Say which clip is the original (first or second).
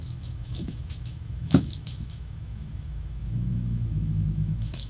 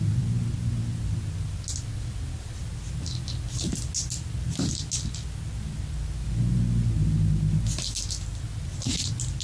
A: second